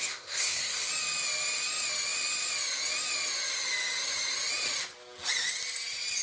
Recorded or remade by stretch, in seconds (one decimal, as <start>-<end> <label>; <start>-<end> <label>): 0.0-0.9 remade; 0.9-6.2 recorded